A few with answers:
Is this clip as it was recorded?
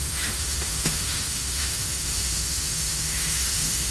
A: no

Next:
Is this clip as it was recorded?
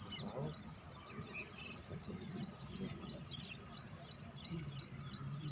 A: yes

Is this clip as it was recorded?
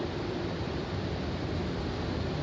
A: yes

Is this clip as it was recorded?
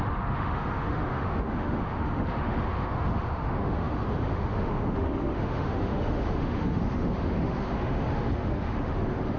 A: no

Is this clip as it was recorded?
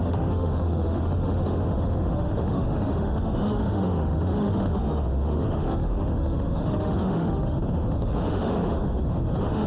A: no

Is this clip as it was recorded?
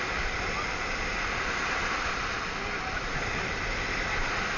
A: yes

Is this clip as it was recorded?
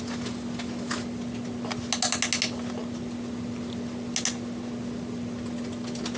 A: yes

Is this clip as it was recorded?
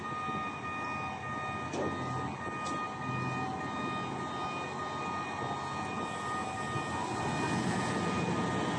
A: yes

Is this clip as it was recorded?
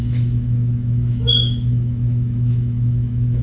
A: no